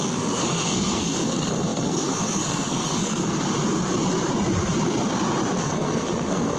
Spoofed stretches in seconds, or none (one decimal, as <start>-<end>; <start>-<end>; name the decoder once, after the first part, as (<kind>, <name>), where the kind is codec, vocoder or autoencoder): 0.0-3.5 (codec, SNAC); 5.6-6.6